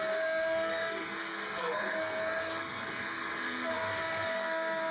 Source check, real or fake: fake